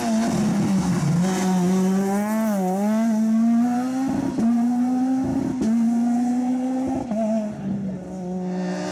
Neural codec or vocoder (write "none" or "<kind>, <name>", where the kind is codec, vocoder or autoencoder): none